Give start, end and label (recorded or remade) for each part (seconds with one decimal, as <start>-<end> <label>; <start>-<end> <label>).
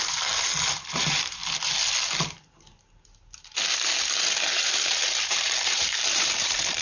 0.0-1.4 remade; 1.4-4.5 recorded; 4.5-6.8 remade